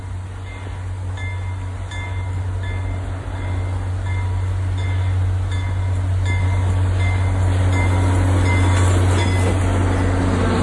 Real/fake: real